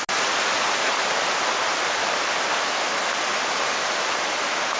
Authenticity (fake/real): real